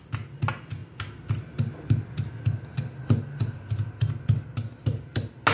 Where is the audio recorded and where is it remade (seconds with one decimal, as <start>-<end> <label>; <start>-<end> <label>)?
0.0-5.5 recorded